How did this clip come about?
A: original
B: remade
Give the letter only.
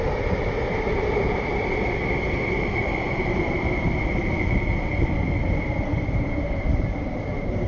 B